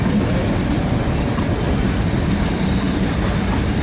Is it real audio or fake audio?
fake